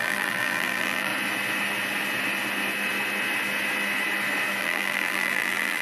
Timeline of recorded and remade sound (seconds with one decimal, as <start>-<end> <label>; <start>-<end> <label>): 0.0-1.1 remade; 1.1-4.6 recorded; 4.6-5.8 remade